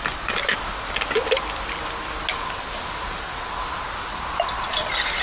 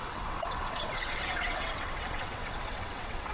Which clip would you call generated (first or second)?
second